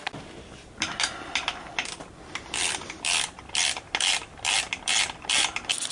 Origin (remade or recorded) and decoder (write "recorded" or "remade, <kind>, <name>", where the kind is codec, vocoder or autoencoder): remade, vocoder, BigVGAN v2